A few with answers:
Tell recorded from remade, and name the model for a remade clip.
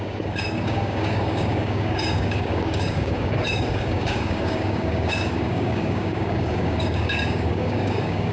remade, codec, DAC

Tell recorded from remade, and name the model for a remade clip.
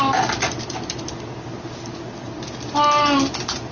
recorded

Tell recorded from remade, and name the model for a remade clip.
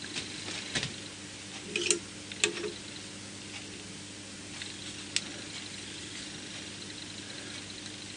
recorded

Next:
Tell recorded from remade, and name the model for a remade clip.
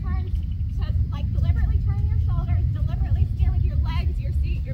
recorded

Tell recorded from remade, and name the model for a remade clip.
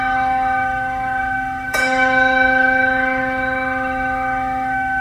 remade, autoencoder, DAC-VAE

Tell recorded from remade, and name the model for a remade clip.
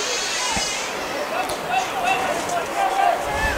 remade, vocoder, BigVGAN v2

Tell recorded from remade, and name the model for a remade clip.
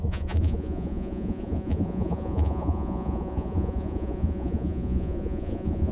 remade, vocoder, Vocos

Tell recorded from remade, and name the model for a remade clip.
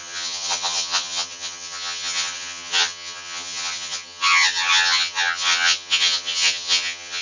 remade, vocoder, HiFi-GAN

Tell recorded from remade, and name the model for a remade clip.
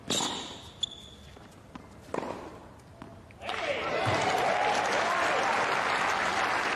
recorded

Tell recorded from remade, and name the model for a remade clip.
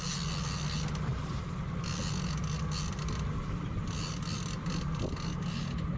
recorded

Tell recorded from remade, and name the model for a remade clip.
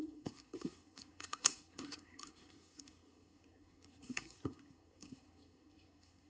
remade, codec, SNAC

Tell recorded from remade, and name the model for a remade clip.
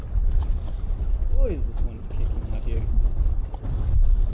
recorded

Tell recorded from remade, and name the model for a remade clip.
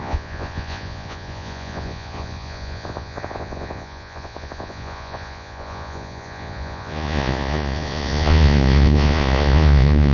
remade, vocoder, Vocos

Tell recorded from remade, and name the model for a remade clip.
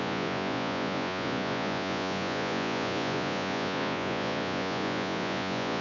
remade, vocoder, Vocos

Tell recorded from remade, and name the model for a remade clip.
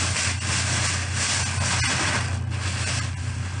recorded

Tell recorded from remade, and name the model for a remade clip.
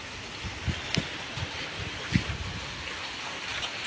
recorded